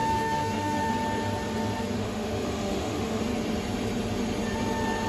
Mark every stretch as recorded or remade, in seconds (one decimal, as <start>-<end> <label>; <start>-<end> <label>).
0.0-0.9 remade; 0.9-2.0 recorded; 2.0-3.2 remade; 3.2-5.1 recorded